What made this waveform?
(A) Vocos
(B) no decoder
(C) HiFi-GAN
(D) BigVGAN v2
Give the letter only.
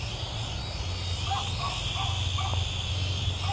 B